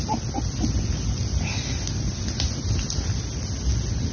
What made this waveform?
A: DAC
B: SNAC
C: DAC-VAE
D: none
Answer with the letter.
D